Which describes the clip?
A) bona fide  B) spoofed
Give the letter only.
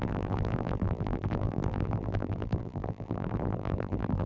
B